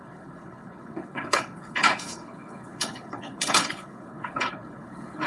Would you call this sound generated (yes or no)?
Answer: yes